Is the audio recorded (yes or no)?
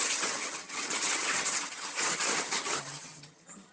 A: no